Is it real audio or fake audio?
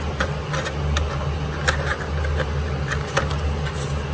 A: real